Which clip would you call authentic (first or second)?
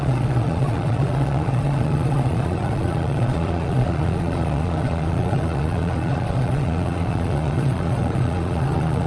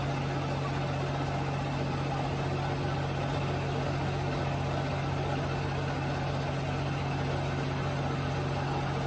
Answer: second